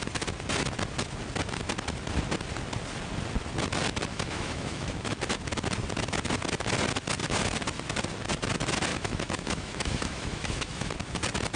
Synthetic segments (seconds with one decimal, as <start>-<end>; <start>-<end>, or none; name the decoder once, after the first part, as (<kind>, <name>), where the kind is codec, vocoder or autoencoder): 4.1-5.2 (autoencoder, DAC-VAE); 8.9-10.9